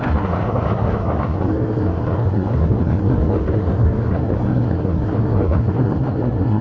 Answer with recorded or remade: remade